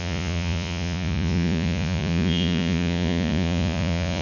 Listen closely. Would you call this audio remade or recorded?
remade